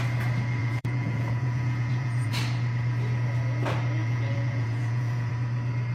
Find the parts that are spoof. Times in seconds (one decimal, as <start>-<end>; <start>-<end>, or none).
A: 0.6-2.3; 4.0-5.3